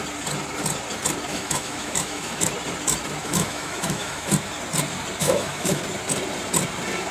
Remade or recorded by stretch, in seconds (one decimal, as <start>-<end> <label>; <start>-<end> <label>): 0.0-1.3 recorded; 1.3-2.5 remade; 2.5-3.2 recorded; 3.2-4.3 remade; 4.3-5.2 recorded; 5.2-5.8 remade; 5.8-7.1 recorded